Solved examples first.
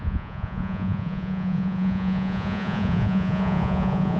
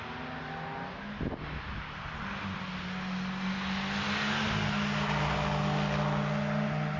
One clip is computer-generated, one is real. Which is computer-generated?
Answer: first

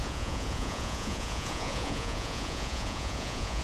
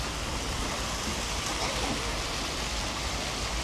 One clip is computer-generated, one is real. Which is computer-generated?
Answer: first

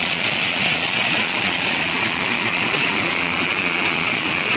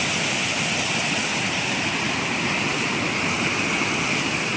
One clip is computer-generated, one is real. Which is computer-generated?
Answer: first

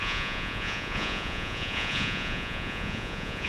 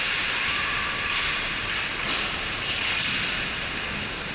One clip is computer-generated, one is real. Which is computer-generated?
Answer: first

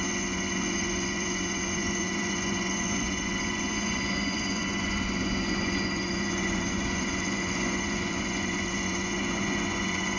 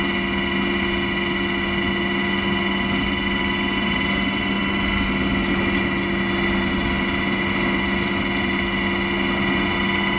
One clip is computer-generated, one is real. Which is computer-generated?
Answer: first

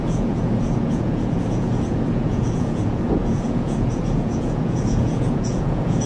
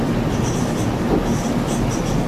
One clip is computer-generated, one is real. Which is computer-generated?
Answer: first